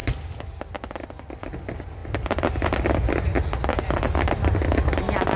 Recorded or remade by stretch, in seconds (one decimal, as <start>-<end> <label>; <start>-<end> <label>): 0.0-5.4 recorded